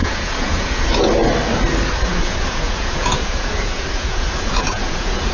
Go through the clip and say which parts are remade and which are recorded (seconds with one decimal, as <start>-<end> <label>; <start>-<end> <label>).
0.0-1.1 remade; 1.1-2.1 recorded; 2.1-5.3 remade